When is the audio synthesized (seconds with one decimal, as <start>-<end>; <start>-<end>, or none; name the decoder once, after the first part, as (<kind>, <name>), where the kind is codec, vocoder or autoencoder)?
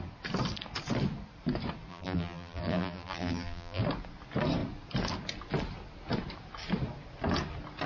1.9-3.8 (vocoder, BigVGAN v2)